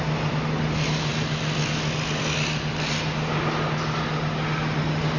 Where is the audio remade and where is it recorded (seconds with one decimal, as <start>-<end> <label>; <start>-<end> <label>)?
0.0-5.2 recorded